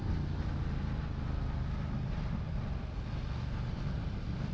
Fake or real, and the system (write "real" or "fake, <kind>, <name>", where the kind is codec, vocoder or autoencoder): real